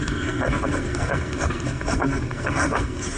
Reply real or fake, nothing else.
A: fake